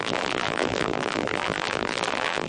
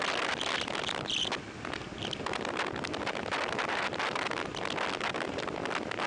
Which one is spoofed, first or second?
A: first